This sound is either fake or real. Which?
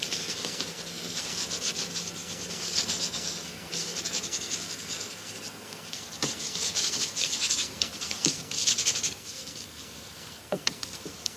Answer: fake